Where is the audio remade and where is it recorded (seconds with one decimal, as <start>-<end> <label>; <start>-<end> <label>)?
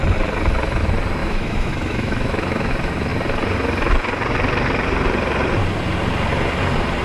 0.0-1.2 recorded; 1.2-2.7 remade; 2.7-7.0 recorded